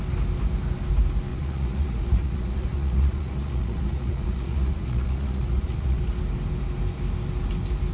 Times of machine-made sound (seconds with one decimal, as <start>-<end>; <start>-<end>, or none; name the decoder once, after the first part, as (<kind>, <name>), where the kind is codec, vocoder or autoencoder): 1.3-6.0 (vocoder, Vocos)